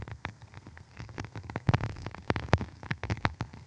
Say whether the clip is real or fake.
fake